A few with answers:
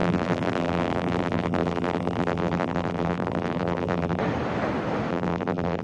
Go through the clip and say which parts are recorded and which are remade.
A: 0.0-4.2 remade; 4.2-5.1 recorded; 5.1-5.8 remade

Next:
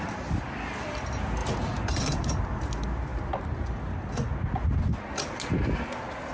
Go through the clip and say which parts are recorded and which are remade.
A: 0.0-1.4 recorded; 1.4-2.4 remade; 2.4-6.3 recorded

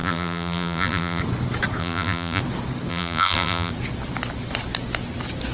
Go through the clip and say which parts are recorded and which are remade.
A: 0.0-1.2 remade; 1.2-1.8 recorded; 1.8-2.4 remade; 2.4-2.9 recorded; 2.9-3.7 remade; 3.7-5.5 recorded

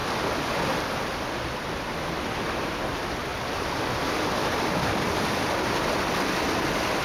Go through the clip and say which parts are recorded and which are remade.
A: 0.0-3.3 recorded; 3.3-5.5 remade; 5.5-7.0 recorded

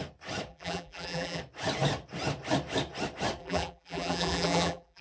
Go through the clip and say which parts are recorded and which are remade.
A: 0.0-0.5 recorded; 0.5-1.4 remade; 1.4-3.4 recorded; 3.4-5.0 remade